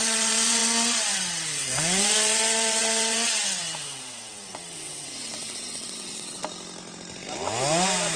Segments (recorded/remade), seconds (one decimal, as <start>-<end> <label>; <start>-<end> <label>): 0.0-6.4 remade; 6.4-8.2 recorded